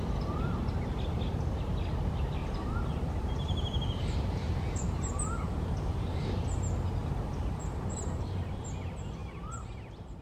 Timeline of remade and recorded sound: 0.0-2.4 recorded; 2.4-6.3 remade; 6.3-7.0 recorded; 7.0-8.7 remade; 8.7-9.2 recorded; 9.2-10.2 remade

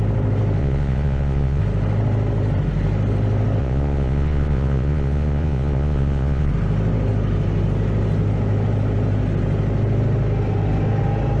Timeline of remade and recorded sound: 0.0-0.6 recorded; 0.6-1.6 remade; 1.6-3.6 recorded; 3.6-6.5 remade; 6.5-11.4 recorded

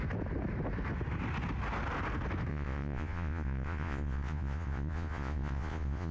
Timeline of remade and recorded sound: 0.0-2.5 recorded; 2.5-6.1 remade

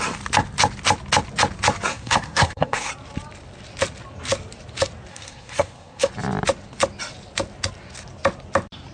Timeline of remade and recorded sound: 0.0-1.9 recorded; 1.9-2.9 remade; 2.9-5.1 recorded; 5.1-6.1 remade; 6.1-8.9 recorded

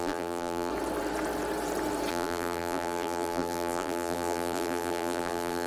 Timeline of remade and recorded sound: 0.0-0.7 remade; 0.7-2.1 recorded; 2.1-5.7 remade